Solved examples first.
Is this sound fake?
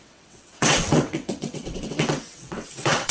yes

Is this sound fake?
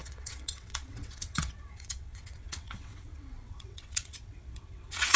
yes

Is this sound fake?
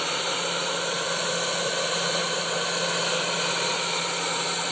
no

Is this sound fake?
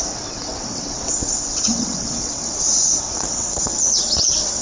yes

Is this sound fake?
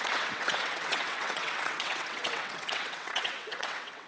yes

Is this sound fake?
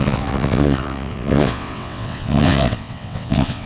yes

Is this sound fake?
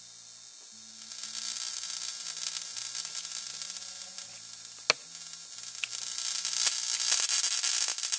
no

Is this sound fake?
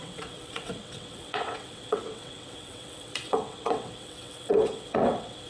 yes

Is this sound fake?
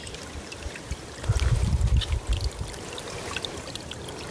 no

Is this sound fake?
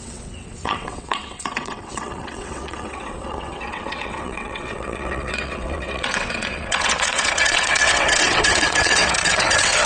yes